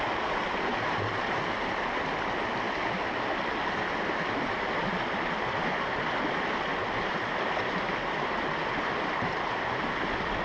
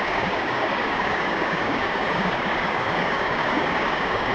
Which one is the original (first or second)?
first